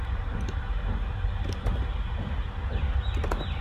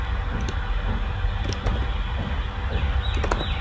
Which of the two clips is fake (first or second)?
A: first